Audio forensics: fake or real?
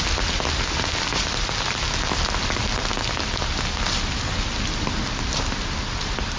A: real